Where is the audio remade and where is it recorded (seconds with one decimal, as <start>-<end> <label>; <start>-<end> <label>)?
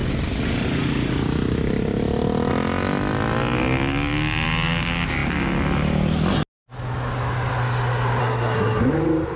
0.0-8.2 recorded; 8.2-8.8 remade; 8.8-9.4 recorded